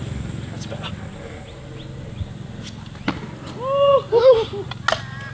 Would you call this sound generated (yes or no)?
no